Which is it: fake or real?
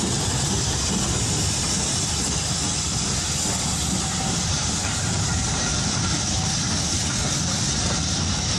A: real